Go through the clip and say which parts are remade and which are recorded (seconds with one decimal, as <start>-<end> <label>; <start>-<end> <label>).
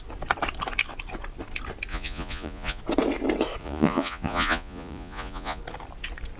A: 0.0-1.9 recorded; 1.9-2.8 remade; 2.8-3.6 recorded; 3.6-5.6 remade; 5.6-6.4 recorded